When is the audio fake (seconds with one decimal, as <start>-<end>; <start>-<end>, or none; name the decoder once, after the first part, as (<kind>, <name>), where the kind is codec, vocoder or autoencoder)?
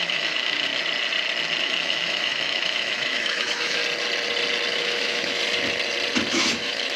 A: 0.0-0.7 (autoencoder, DAC-VAE); 1.6-3.8; 4.7-5.4; 6.3-7.0